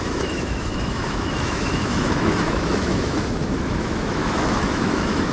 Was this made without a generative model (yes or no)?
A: no